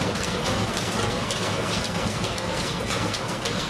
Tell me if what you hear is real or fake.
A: fake